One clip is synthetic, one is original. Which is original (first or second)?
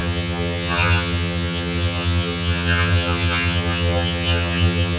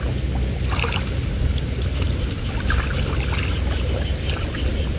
second